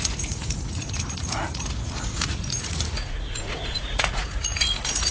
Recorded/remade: remade